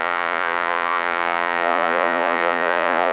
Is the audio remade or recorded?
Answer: remade